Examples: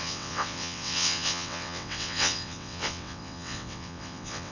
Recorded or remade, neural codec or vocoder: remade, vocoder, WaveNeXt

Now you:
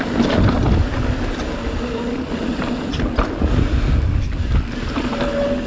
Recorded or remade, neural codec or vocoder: recorded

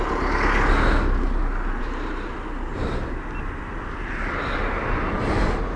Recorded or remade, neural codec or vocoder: recorded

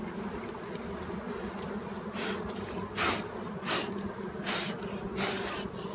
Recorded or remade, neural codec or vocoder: recorded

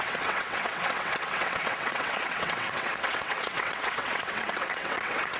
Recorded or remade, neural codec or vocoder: remade, vocoder, WaveNeXt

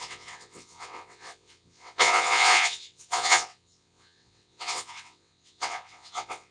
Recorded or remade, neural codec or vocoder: remade, vocoder, WaveNeXt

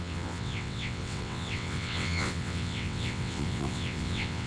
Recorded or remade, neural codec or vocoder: remade, vocoder, WaveNeXt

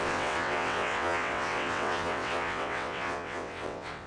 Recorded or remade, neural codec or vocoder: remade, vocoder, WaveNeXt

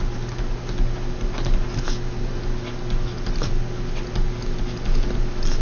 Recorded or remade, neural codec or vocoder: recorded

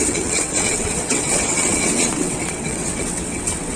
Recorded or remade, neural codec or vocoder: remade, vocoder, WaveNeXt